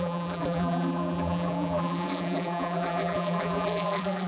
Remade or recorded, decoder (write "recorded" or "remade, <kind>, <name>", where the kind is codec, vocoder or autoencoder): remade, vocoder, BigVGAN v2